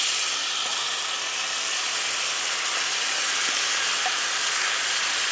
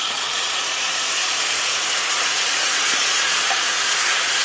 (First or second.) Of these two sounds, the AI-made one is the second